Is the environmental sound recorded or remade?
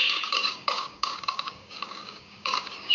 remade